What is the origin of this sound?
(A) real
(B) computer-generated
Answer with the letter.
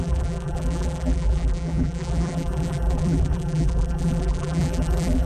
B